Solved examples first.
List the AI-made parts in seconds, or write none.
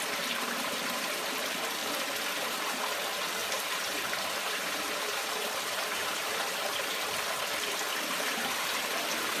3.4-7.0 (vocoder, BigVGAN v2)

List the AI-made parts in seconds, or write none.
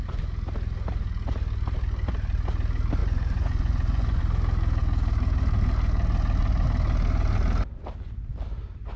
3.0-4.2 (vocoder, Vocos)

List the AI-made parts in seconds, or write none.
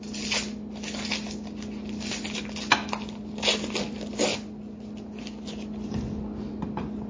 none